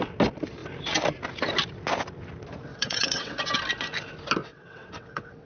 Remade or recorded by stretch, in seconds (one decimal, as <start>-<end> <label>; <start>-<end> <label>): 0.0-2.7 recorded; 2.7-3.4 remade; 3.4-4.4 recorded; 4.4-5.5 remade